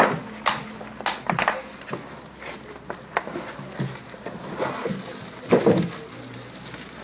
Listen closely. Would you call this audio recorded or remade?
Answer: recorded